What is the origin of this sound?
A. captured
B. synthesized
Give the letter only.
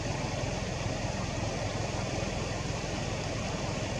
B